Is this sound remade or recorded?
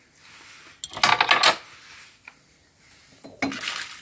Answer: recorded